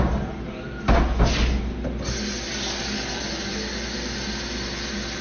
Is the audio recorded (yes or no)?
yes